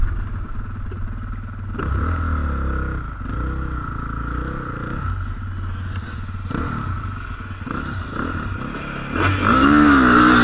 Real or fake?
real